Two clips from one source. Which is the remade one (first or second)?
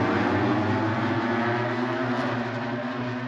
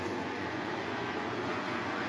second